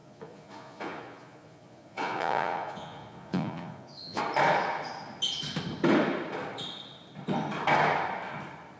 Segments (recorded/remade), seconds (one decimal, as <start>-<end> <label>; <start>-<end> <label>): 0.0-4.2 remade; 4.2-8.8 recorded